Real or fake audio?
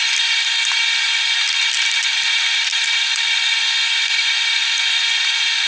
real